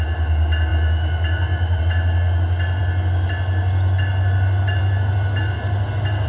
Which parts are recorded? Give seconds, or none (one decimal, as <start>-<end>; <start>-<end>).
0.0-6.3